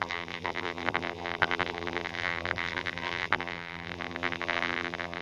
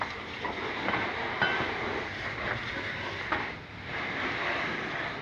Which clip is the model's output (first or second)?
first